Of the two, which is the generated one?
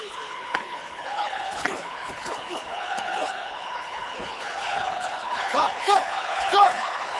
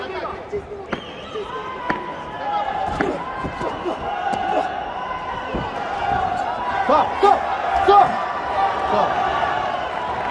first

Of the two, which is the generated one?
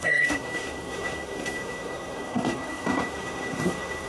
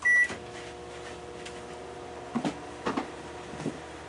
first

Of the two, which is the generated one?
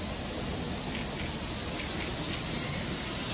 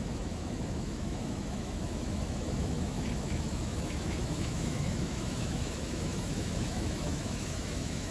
second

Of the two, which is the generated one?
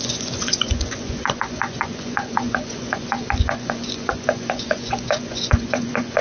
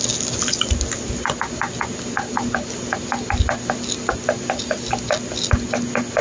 first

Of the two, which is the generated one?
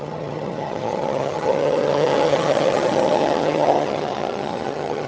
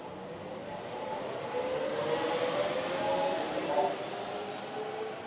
first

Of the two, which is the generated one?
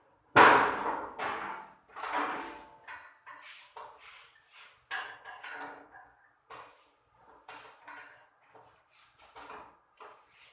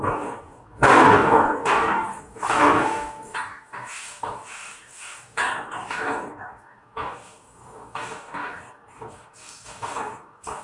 second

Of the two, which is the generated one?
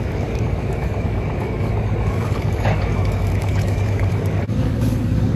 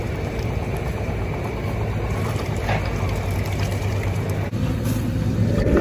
first